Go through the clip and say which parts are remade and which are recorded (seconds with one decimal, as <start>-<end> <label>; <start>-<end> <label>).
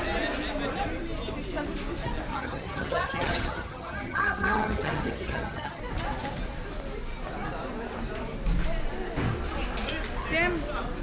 0.0-2.3 recorded; 2.3-5.8 remade; 5.8-11.0 recorded